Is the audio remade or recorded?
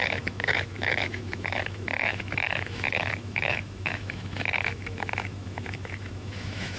remade